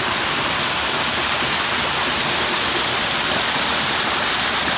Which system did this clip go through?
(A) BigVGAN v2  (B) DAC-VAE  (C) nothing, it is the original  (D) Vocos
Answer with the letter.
C